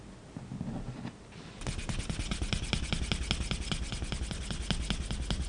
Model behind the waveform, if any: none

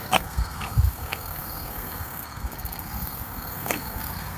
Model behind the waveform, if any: codec, SNAC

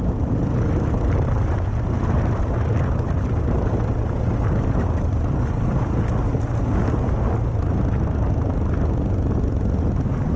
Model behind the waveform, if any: none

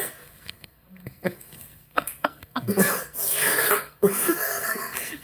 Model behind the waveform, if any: codec, SNAC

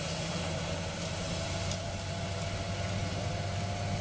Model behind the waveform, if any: none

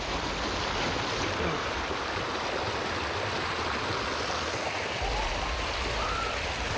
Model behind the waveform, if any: none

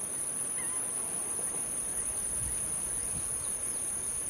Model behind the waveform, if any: none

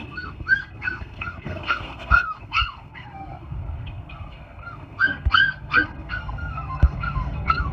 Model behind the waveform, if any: codec, SNAC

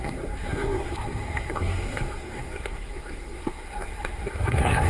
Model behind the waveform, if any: codec, SNAC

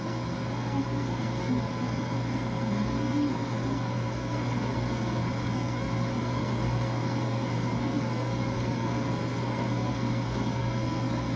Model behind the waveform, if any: codec, SNAC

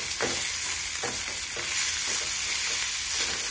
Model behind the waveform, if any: none